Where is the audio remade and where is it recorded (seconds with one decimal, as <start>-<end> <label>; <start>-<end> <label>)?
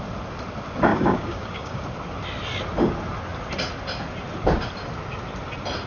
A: 0.0-0.9 recorded; 0.9-1.8 remade; 1.8-5.9 recorded